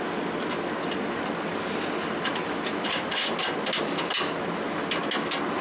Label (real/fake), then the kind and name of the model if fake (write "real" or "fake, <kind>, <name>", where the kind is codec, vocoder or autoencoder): real